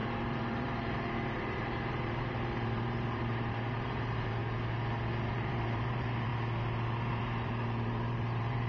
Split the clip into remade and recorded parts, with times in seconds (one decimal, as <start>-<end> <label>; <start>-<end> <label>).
0.0-4.4 remade; 4.4-5.3 recorded; 5.3-6.3 remade; 6.3-7.1 recorded; 7.1-8.7 remade